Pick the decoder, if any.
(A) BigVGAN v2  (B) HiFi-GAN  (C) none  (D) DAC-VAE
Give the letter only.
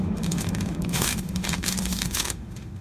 D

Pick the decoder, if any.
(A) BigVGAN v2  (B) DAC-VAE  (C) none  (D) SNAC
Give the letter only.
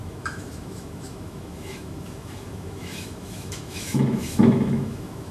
B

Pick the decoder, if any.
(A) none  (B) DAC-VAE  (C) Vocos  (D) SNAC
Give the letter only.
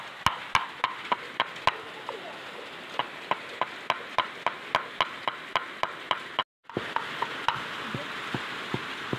A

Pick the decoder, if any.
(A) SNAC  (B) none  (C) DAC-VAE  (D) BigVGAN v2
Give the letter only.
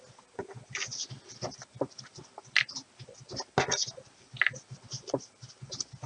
B